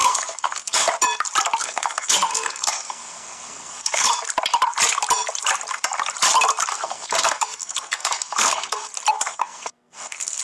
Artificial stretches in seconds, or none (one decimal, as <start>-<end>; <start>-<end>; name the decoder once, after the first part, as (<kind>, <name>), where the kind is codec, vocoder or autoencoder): 0.0-0.9 (codec, SNAC); 1.6-4.1; 6.7-8.9; 9.3-10.4